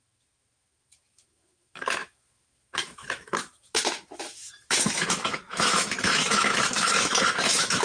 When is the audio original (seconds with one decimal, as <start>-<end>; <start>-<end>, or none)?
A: none